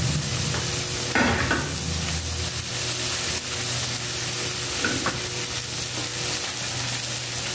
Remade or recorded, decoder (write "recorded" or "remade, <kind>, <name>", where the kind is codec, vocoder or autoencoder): recorded